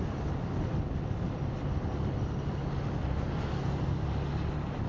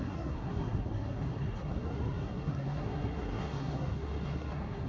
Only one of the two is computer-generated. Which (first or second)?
second